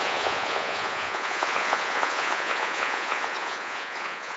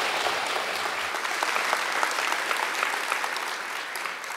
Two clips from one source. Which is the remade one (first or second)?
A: first